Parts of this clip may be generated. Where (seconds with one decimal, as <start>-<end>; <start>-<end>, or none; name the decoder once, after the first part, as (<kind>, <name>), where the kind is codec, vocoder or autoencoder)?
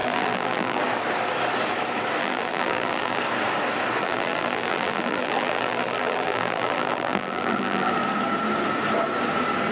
0.0-0.8 (vocoder, BigVGAN v2); 2.2-3.2; 4.0-7.9